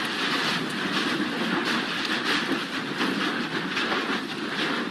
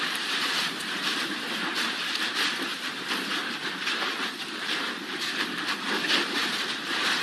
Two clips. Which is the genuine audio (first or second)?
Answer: first